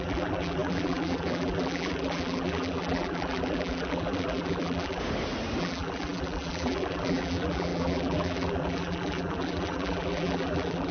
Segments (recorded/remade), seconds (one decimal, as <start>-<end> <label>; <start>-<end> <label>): 0.0-5.0 remade; 5.0-5.6 recorded; 5.6-10.9 remade